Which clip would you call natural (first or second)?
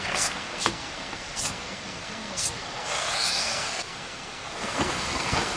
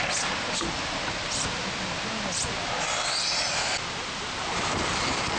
second